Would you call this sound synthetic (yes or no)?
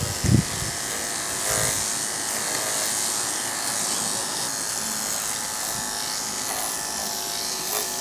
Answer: no